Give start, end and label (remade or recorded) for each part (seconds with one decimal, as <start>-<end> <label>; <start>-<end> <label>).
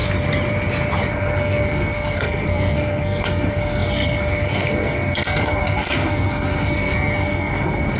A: 0.0-1.1 recorded; 1.1-8.0 remade